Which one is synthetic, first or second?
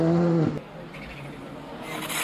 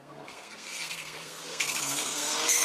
second